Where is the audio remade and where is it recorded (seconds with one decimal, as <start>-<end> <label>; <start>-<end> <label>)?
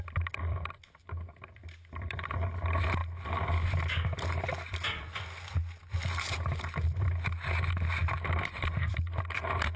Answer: 0.0-9.8 recorded